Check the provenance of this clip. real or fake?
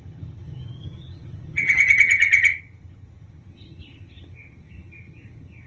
fake